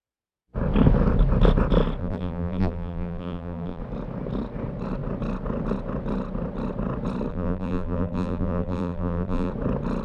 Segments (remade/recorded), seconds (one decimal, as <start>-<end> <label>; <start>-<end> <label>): 0.0-2.0 recorded; 2.0-3.8 remade; 3.8-7.3 recorded; 7.3-9.5 remade; 9.5-10.0 recorded